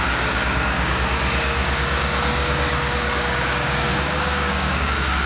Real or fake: fake